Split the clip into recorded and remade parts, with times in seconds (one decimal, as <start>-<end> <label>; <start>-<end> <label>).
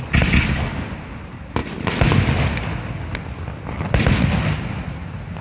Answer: 0.0-5.4 recorded